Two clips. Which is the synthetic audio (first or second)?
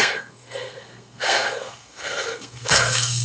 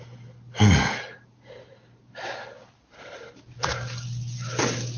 first